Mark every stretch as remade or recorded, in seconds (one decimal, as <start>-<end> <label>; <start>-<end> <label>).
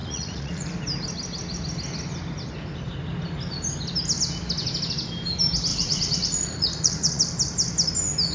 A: 0.0-0.7 remade; 0.7-5.7 recorded; 5.7-7.2 remade; 7.2-8.3 recorded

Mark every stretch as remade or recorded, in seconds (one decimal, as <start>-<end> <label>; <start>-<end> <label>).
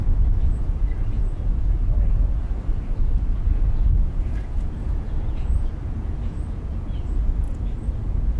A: 0.0-2.4 remade; 2.4-3.0 recorded; 3.0-8.4 remade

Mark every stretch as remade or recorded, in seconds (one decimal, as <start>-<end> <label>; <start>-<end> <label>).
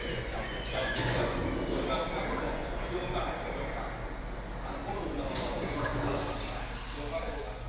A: 0.0-1.4 remade; 1.4-2.4 recorded; 2.4-3.0 remade; 3.0-4.9 recorded; 4.9-5.9 remade; 5.9-7.2 recorded; 7.2-7.7 remade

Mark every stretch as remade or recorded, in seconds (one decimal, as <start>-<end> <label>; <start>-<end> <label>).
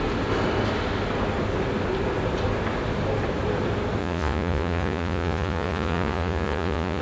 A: 0.0-4.0 recorded; 4.0-7.0 remade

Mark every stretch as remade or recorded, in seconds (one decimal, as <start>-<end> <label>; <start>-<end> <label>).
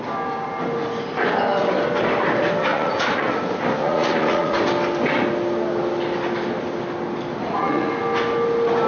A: 0.0-2.7 recorded; 2.7-3.4 remade; 3.4-3.8 recorded; 3.8-4.6 remade; 4.6-7.4 recorded; 7.4-7.9 remade; 7.9-8.9 recorded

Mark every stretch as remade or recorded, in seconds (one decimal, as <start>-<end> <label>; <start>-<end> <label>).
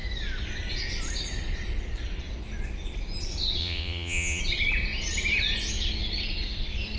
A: 0.0-3.6 recorded; 3.6-4.4 remade; 4.4-7.0 recorded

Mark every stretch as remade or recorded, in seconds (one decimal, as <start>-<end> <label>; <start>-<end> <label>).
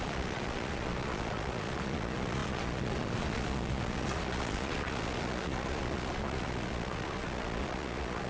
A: 0.0-8.3 remade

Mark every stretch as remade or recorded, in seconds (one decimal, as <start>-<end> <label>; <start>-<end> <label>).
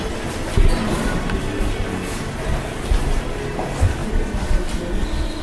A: 0.0-5.4 recorded